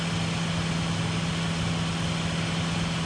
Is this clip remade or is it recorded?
recorded